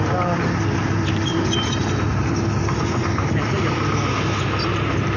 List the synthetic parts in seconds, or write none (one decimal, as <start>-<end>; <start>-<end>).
none